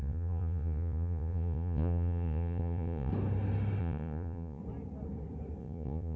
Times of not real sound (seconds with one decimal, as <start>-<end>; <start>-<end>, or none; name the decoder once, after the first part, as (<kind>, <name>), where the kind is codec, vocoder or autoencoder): 0.0-3.1 (vocoder, Vocos); 3.8-4.6; 5.6-6.2